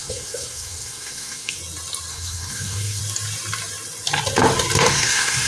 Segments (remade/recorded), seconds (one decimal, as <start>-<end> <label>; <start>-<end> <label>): 0.0-1.6 remade; 1.6-2.1 recorded; 2.1-3.0 remade; 3.0-4.9 recorded; 4.9-5.5 remade